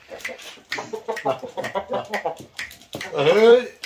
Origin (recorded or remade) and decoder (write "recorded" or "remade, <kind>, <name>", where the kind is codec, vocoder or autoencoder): remade, vocoder, BigVGAN v2